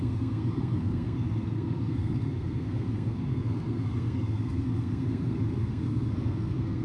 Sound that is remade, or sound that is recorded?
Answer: remade